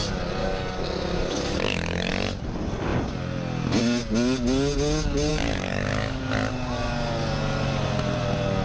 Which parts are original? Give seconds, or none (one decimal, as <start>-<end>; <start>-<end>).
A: 0.0-0.4; 2.1-5.3; 6.2-8.6